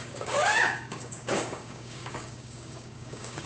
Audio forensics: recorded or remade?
remade